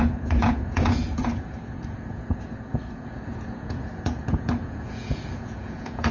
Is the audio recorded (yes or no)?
no